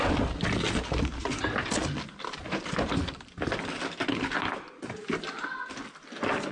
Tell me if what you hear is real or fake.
real